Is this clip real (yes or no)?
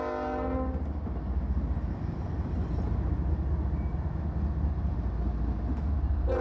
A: yes